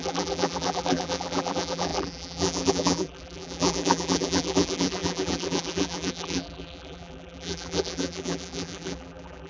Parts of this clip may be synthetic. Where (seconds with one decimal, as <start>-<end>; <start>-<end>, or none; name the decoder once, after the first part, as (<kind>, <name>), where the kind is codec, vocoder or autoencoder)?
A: 0.0-9.5 (vocoder, BigVGAN v2)